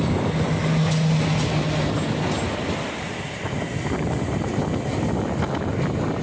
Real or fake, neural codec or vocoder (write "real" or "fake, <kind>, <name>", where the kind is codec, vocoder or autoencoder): real